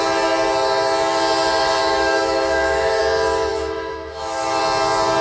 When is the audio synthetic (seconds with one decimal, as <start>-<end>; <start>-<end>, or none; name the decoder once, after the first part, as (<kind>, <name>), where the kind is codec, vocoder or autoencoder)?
1.8-3.0 (autoencoder, DAC-VAE); 3.5-4.6